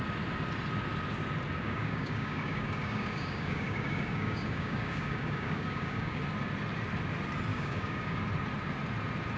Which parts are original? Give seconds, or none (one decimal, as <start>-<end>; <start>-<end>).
0.0-1.6; 6.2-7.5; 8.2-9.4